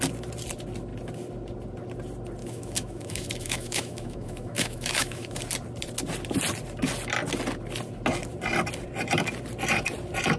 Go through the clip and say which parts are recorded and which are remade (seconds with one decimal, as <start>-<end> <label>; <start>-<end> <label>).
0.0-2.4 recorded; 2.4-5.4 remade; 5.4-10.4 recorded